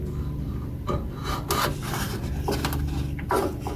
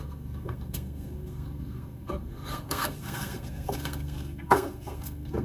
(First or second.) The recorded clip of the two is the first